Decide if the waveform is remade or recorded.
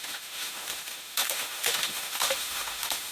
remade